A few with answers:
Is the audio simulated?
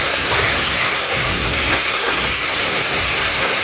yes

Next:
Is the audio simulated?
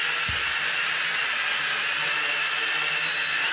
no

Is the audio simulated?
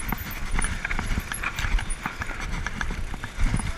no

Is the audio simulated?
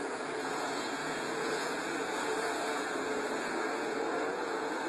yes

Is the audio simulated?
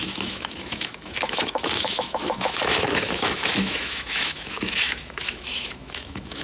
yes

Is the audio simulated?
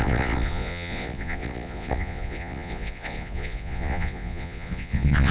yes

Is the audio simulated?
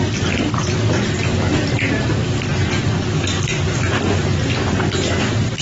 no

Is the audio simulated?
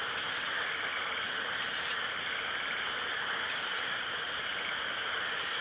no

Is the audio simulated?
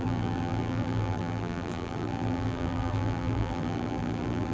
yes